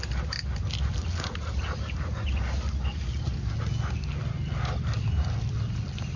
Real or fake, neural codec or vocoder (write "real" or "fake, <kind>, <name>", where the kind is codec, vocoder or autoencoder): real